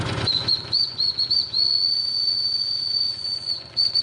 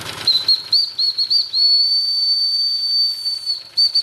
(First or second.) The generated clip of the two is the first